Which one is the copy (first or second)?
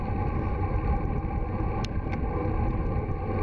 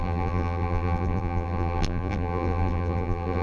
second